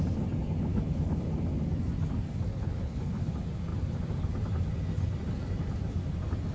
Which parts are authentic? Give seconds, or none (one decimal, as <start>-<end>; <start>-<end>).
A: 0.0-0.7; 1.3-2.5; 3.3-6.5